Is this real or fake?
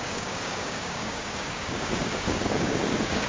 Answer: fake